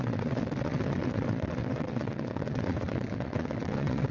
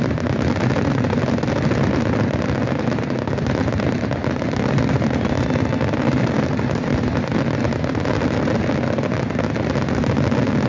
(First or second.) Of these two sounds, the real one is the second